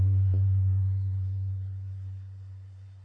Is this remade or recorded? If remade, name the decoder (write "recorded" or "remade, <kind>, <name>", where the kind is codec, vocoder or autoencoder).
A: remade, codec, SNAC